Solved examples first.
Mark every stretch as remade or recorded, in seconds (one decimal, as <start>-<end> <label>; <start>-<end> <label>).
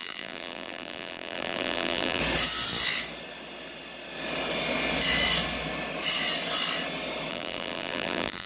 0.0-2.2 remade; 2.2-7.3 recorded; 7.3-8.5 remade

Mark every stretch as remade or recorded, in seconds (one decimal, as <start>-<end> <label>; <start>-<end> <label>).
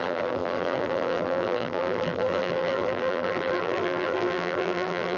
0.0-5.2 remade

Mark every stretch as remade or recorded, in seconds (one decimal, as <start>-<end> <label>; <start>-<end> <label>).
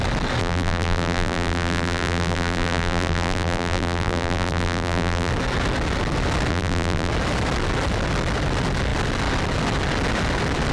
0.0-0.4 recorded; 0.4-5.3 remade; 5.3-6.5 recorded; 6.5-7.1 remade; 7.1-10.7 recorded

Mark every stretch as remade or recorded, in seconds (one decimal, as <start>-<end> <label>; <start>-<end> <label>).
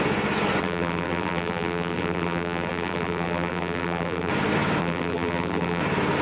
0.0-0.6 recorded; 0.6-4.3 remade; 4.3-4.8 recorded; 4.8-5.8 remade; 5.8-6.2 recorded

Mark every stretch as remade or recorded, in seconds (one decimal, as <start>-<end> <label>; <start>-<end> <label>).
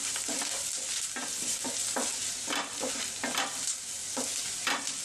0.0-2.9 remade; 2.9-5.0 recorded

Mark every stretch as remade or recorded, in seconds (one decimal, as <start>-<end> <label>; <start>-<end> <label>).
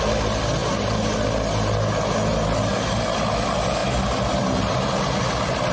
0.0-5.7 recorded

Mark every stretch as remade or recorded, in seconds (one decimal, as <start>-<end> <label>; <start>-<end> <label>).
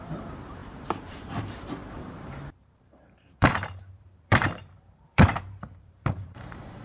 0.0-6.8 remade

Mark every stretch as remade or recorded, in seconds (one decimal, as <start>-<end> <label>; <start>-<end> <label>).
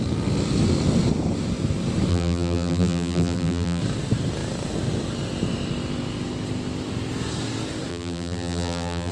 0.0-2.1 recorded; 2.1-3.8 remade; 3.8-7.9 recorded; 7.9-9.1 remade